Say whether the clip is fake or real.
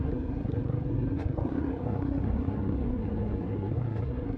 fake